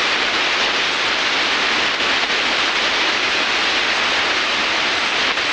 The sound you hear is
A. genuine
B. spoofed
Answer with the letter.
A